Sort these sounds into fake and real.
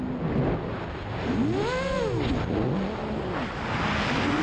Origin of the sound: real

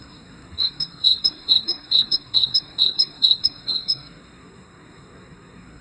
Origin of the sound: fake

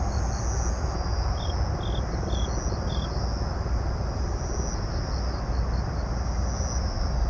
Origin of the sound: real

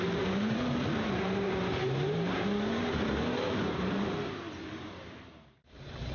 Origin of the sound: fake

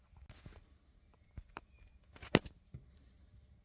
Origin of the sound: real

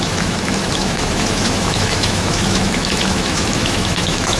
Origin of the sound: fake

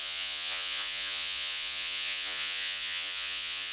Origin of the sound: fake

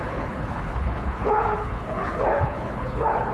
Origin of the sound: fake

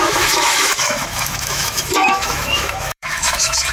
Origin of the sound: fake